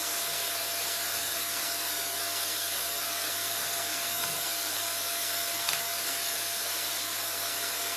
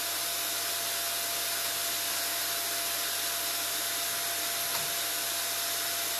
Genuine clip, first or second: second